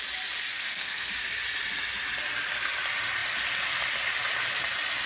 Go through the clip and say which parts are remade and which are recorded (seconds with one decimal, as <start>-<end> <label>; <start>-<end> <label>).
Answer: 0.0-0.5 recorded; 0.5-1.1 remade; 1.1-5.1 recorded